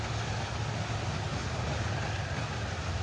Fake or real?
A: real